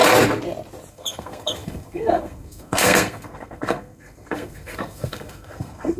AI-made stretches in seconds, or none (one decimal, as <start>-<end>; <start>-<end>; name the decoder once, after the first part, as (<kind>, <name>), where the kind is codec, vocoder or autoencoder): 0.9-6.0 (codec, SNAC)